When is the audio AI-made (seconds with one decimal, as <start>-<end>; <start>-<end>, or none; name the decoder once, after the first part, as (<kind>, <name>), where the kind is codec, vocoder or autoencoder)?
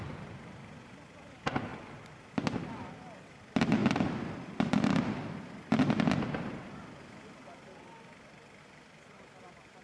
none